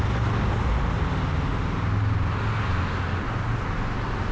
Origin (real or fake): real